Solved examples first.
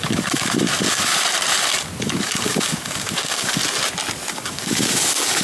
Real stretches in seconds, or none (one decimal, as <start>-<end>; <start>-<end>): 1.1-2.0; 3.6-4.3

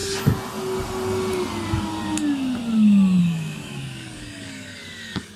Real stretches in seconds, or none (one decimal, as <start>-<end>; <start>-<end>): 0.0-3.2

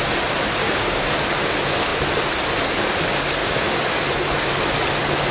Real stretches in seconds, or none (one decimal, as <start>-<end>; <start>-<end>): 0.0-0.6; 1.1-3.4; 4.0-5.3

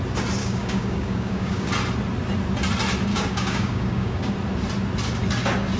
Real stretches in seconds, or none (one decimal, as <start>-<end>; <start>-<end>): 0.0-0.4; 1.7-3.1; 4.3-5.8

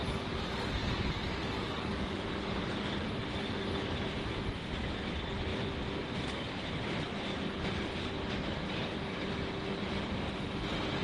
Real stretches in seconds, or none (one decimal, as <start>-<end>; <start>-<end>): 2.4-11.0